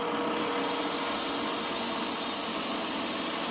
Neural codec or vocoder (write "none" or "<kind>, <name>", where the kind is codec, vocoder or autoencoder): none